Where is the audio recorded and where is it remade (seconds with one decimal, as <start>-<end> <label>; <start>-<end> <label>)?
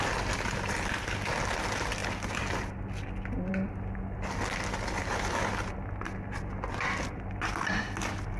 0.0-8.4 recorded